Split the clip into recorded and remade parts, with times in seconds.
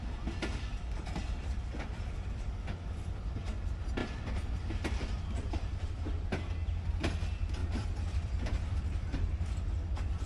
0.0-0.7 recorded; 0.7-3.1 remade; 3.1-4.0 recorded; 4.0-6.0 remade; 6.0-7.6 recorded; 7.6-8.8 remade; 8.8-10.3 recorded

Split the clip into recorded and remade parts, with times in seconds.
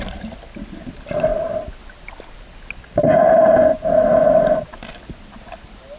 0.0-6.0 recorded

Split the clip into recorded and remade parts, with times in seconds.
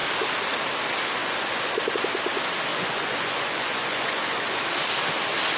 0.0-1.2 recorded; 1.2-1.7 remade; 1.7-2.7 recorded; 2.7-4.6 remade; 4.6-5.6 recorded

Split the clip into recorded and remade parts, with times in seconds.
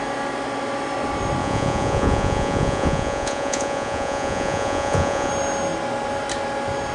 0.0-1.4 recorded; 1.4-5.3 remade; 5.3-6.9 recorded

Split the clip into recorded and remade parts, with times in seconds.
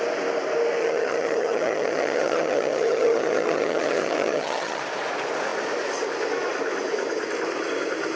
0.0-0.8 recorded; 0.8-4.8 remade; 4.8-8.2 recorded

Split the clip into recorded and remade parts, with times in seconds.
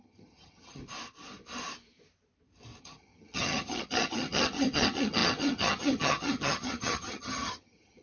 0.0-0.8 remade; 0.8-2.8 recorded; 2.8-8.0 remade